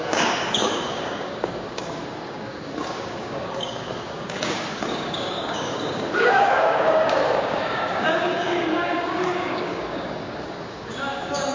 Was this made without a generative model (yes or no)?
no